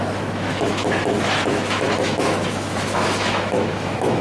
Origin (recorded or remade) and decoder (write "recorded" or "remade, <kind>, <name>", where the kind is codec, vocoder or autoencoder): remade, autoencoder, DAC-VAE